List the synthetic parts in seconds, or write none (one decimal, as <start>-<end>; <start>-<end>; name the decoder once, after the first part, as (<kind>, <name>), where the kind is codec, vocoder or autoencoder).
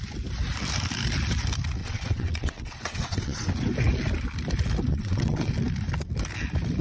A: 1.8-3.5 (vocoder, WaveNeXt); 4.9-5.5